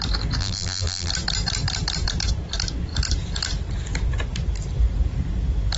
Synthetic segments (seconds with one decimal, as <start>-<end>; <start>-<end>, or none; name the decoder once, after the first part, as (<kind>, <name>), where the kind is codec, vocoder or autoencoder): 0.4-1.1 (vocoder, BigVGAN v2)